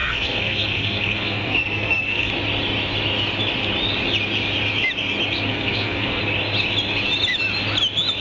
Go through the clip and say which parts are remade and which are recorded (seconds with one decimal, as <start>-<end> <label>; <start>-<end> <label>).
0.0-2.3 remade; 2.3-5.5 recorded; 5.5-6.2 remade; 6.2-8.2 recorded